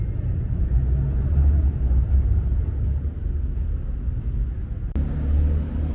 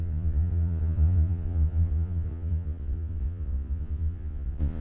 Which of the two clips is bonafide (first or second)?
first